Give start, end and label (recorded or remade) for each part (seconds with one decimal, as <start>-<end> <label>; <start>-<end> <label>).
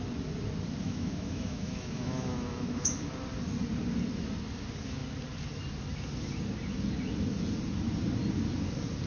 0.0-0.8 recorded; 0.8-3.1 remade; 3.1-9.1 recorded